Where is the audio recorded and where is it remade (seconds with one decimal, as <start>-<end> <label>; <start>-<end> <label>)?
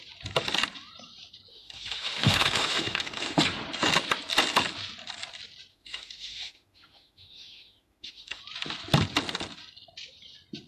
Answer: 0.0-1.5 recorded; 1.5-3.4 remade; 3.4-5.7 recorded; 5.7-8.4 remade; 8.4-10.7 recorded